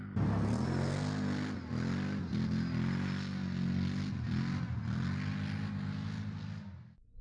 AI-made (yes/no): no